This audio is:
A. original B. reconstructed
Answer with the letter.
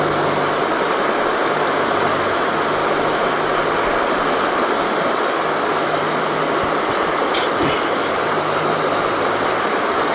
A